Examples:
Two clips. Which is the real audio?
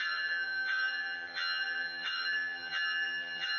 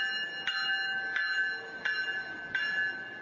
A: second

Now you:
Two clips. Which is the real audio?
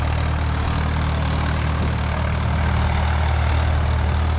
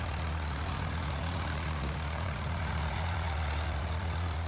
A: first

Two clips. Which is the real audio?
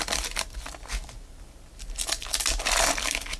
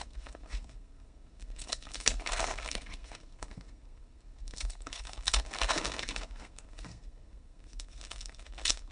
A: first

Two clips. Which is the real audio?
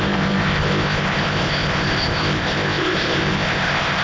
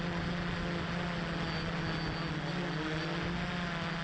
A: second